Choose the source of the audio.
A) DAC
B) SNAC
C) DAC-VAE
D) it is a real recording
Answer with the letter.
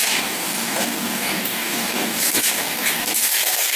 A